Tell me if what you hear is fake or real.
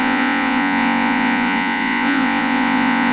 fake